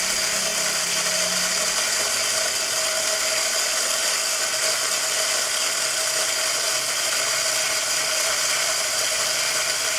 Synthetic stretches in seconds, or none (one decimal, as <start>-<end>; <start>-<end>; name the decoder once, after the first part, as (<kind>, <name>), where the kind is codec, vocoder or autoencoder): none